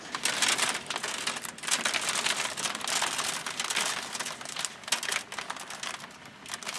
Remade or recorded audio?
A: recorded